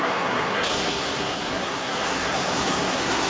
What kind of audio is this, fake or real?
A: fake